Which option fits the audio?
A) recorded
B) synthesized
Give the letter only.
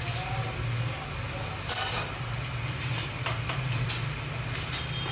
A